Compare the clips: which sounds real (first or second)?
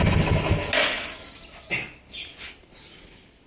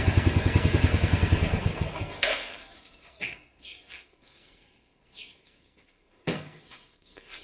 first